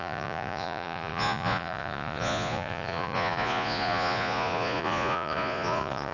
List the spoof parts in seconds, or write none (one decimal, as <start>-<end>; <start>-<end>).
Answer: 0.0-6.1